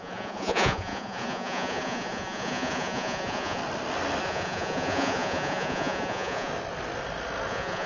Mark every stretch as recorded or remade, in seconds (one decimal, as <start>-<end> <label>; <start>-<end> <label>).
0.0-3.6 remade; 3.6-4.2 recorded; 4.2-6.5 remade; 6.5-7.5 recorded; 7.5-7.9 remade